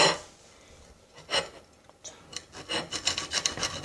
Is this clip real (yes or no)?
yes